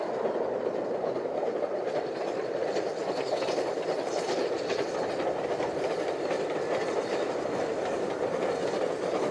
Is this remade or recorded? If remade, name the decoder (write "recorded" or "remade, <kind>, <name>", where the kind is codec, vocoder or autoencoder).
recorded